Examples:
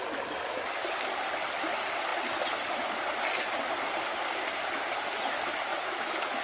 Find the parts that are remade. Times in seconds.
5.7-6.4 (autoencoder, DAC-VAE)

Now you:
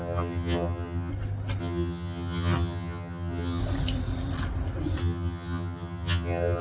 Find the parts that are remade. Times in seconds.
0.0-1.1 (vocoder, HiFi-GAN); 1.6-3.6; 5.0-6.6

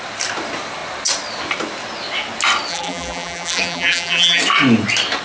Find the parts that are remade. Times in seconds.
2.7-4.4 (vocoder, BigVGAN v2)

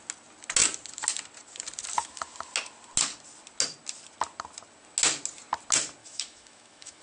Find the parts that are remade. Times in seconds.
6.0-7.0 (autoencoder, DAC-VAE)

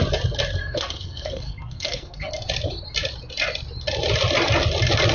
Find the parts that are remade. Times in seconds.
0.6-2.3 (codec, SNAC)